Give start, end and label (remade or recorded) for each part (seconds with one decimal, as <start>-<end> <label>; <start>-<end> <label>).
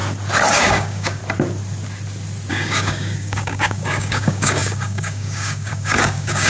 0.0-0.5 recorded; 0.5-1.2 remade; 1.2-2.5 recorded; 2.5-6.5 remade